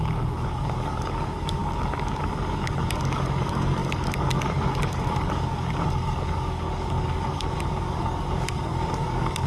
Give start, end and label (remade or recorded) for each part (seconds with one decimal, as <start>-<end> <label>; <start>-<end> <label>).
0.0-9.5 remade